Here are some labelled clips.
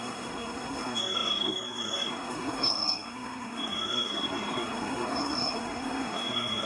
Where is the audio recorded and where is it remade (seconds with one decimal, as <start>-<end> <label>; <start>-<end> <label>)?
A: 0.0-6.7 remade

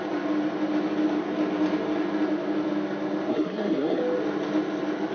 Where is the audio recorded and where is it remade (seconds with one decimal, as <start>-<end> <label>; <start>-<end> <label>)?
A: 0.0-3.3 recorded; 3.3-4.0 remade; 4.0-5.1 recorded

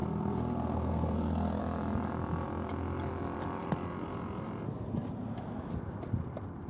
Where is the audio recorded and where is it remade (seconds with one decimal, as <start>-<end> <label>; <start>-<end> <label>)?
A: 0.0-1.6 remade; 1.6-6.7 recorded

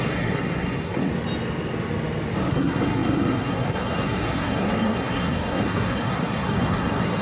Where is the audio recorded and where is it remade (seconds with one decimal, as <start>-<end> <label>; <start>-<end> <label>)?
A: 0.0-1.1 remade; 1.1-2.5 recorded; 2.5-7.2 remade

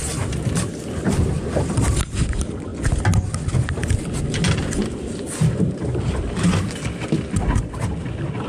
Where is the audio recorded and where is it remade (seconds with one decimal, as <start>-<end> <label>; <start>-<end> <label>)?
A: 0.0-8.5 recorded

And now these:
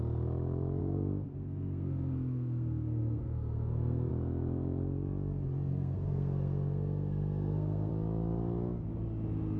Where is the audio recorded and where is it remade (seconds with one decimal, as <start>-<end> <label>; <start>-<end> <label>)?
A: 0.0-0.8 recorded; 0.8-4.1 remade; 4.1-5.7 recorded; 5.7-7.9 remade; 7.9-9.6 recorded

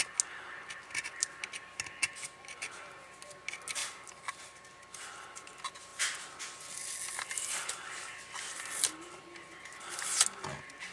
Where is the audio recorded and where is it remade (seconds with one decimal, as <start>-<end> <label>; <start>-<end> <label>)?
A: 0.0-10.9 recorded

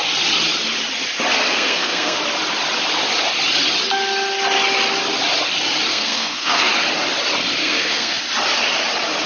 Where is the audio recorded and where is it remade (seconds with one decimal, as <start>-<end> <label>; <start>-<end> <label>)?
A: 0.0-1.5 recorded; 1.5-2.2 remade; 2.2-5.9 recorded; 5.9-6.7 remade; 6.7-7.6 recorded; 7.6-8.2 remade; 8.2-9.3 recorded